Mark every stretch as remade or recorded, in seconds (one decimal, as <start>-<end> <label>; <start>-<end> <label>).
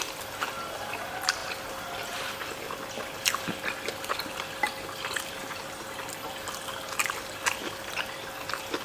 0.0-8.8 recorded